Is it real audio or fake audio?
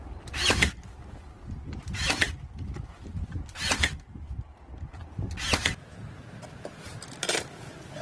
real